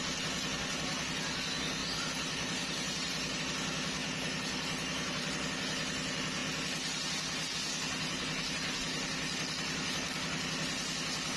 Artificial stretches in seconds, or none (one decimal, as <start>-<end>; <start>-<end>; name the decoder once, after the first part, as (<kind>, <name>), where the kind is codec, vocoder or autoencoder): 1.8-3.4 (vocoder, BigVGAN v2); 4.0-5.3